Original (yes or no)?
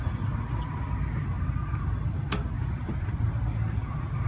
yes